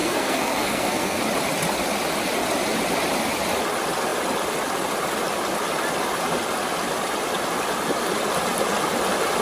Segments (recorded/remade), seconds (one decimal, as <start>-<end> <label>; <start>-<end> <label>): 0.0-1.2 remade; 1.2-9.4 recorded